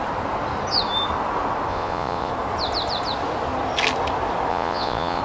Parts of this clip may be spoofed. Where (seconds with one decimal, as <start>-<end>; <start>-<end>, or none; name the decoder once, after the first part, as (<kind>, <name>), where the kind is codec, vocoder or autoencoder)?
1.7-2.3 (vocoder, Vocos); 4.5-5.2